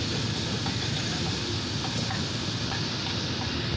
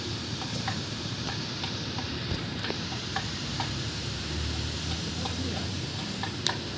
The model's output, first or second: second